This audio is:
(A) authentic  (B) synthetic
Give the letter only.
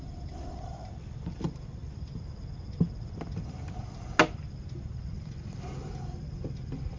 A